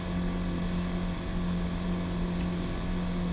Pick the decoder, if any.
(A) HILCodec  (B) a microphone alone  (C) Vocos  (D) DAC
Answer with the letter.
B